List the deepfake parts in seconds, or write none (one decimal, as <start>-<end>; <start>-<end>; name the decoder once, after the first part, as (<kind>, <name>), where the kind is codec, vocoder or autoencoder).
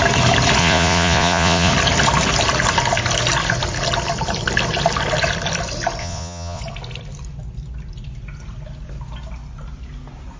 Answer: 0.6-1.7 (vocoder, Vocos); 6.0-6.6